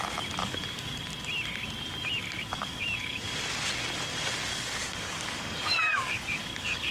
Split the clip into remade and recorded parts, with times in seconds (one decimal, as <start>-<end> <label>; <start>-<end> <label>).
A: 0.0-0.4 recorded; 0.4-1.0 remade; 1.0-2.4 recorded; 2.4-3.3 remade; 3.3-4.5 recorded; 4.5-6.9 remade